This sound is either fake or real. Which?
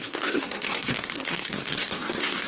fake